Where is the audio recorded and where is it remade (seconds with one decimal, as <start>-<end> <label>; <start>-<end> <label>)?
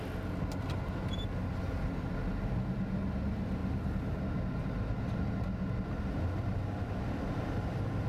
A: 0.0-3.6 recorded; 3.6-4.2 remade; 4.2-8.1 recorded